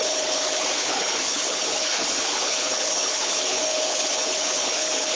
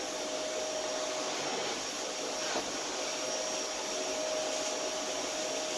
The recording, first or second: second